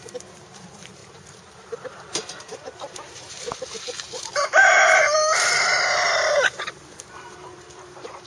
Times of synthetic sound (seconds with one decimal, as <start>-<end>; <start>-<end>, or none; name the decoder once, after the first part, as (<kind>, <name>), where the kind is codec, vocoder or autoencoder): 0.0-8.3 (vocoder, BigVGAN v2)